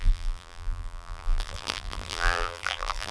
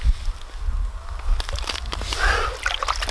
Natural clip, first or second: second